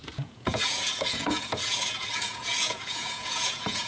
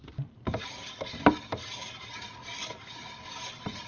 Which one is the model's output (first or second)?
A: first